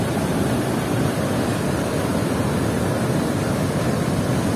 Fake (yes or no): no